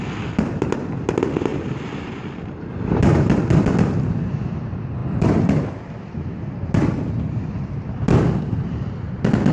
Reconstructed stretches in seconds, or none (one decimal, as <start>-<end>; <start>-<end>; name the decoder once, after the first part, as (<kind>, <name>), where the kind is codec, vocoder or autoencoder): 1.5-2.9 (vocoder, BigVGAN v2); 5.0-5.8